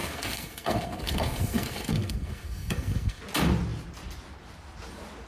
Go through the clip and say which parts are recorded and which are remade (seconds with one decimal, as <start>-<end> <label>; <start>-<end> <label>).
0.0-3.2 remade; 3.2-5.3 recorded